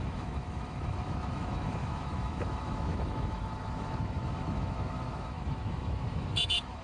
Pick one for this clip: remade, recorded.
remade